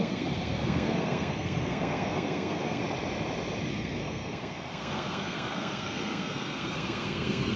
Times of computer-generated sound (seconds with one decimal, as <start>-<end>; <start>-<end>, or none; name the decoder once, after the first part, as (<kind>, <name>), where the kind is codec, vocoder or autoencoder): 0.0-2.8 (codec, SNAC); 3.7-7.6